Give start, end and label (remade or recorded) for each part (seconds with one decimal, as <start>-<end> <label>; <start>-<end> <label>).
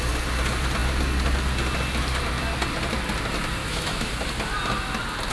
0.0-3.6 recorded; 3.6-4.1 remade; 4.1-5.3 recorded